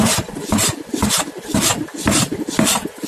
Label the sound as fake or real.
real